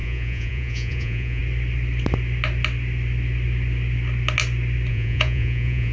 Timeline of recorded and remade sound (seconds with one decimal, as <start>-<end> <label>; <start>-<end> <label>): 0.0-1.4 remade; 1.4-4.9 recorded; 4.9-5.9 remade